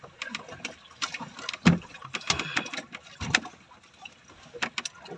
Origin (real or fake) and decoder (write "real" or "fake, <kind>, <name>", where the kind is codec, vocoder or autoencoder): real